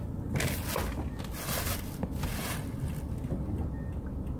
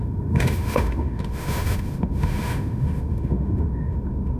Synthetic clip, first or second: second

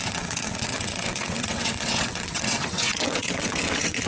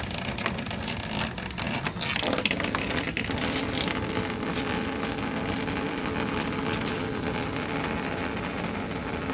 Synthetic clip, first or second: first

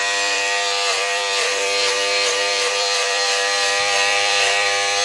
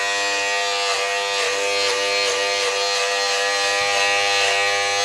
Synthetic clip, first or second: first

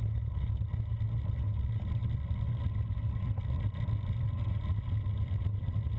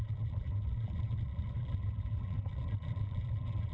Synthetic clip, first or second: second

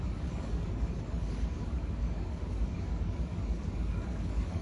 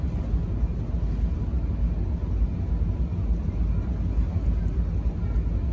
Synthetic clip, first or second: first